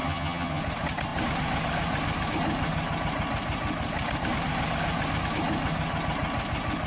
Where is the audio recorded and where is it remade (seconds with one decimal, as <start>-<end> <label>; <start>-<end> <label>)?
0.0-0.6 remade; 0.6-6.9 recorded